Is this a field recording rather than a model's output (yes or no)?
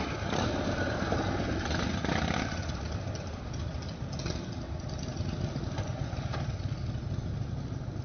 yes